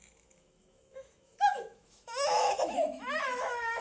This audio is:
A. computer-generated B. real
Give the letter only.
A